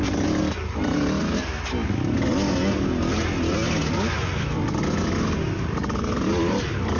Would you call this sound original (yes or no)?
yes